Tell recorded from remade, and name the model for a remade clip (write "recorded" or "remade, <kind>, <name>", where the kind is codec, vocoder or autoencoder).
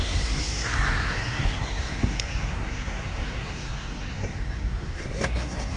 remade, codec, SNAC